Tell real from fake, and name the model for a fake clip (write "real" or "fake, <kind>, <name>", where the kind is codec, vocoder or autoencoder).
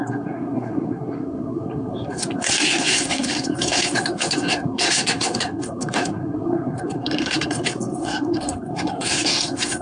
fake, codec, SNAC